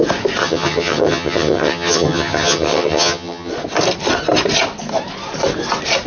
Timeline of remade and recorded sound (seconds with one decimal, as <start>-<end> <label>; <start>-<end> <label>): 0.0-0.4 recorded; 0.4-3.5 remade; 3.5-6.1 recorded